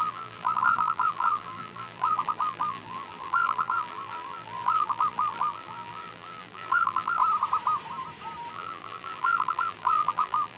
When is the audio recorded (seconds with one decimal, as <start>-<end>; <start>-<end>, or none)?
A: 7.2-8.5